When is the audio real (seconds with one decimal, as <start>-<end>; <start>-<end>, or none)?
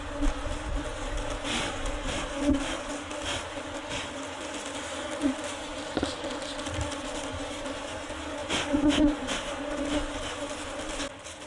0.0-11.5